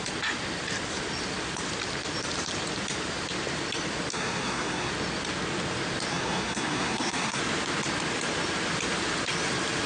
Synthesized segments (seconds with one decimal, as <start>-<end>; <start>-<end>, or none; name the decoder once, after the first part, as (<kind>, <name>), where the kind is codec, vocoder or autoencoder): 4.1-4.9 (codec, SNAC); 6.1-7.4